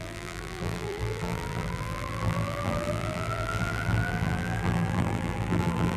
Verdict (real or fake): fake